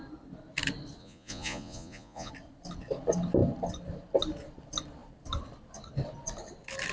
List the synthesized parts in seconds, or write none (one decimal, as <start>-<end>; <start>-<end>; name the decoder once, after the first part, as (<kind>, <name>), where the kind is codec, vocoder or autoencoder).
1.0-2.3 (vocoder, Vocos)

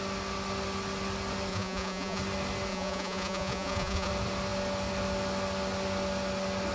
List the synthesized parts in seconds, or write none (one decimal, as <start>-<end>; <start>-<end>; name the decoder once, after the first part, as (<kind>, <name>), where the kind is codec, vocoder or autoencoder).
1.5-2.2 (vocoder, Vocos); 2.7-4.1

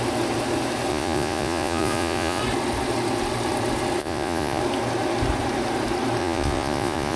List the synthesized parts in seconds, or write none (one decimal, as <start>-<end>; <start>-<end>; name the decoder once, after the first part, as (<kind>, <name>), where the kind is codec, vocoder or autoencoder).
0.9-2.4 (vocoder, Vocos); 4.0-4.6; 6.2-7.2